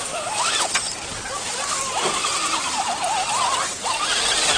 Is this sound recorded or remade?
recorded